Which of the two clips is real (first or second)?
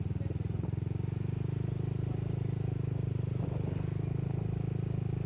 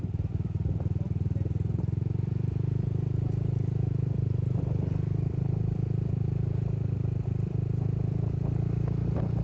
first